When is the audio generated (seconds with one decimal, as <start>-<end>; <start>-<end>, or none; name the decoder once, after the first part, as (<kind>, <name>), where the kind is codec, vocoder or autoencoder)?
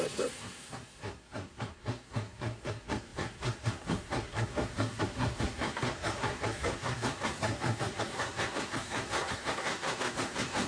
0.0-10.7 (codec, SNAC)